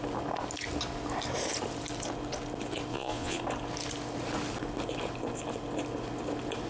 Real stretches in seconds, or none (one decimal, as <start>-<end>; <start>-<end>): 0.0-2.9; 3.4-6.7